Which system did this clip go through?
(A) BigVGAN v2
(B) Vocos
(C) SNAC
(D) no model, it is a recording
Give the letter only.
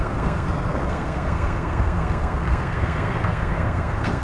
C